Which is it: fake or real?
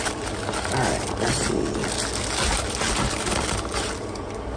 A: real